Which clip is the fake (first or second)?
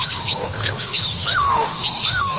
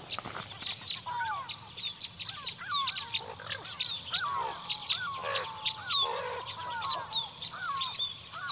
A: first